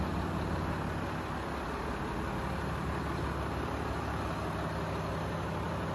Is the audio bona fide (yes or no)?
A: yes